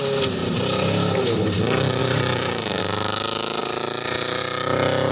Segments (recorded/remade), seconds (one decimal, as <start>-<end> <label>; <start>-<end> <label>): 0.0-0.4 recorded; 0.4-1.6 remade; 1.6-2.0 recorded; 2.0-2.8 remade; 2.8-3.6 recorded; 3.6-4.4 remade; 4.4-5.1 recorded